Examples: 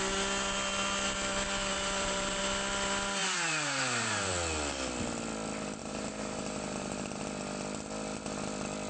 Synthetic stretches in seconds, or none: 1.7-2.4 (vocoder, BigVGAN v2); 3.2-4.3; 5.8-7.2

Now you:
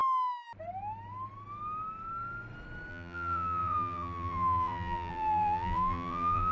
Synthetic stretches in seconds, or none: 2.9-6.5 (vocoder, BigVGAN v2)

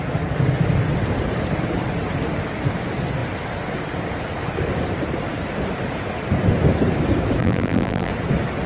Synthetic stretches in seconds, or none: 7.4-8.1 (vocoder, BigVGAN v2)